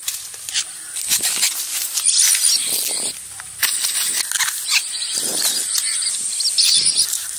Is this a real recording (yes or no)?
yes